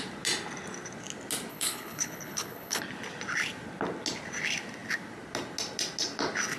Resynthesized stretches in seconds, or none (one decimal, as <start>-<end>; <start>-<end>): 1.5-2.8